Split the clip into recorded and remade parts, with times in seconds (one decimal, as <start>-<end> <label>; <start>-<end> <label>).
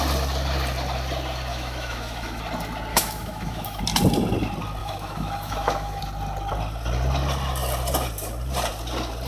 0.0-1.5 recorded; 1.5-2.4 remade; 2.4-2.9 recorded; 2.9-3.8 remade; 3.8-4.8 recorded; 4.8-6.0 remade; 6.0-9.3 recorded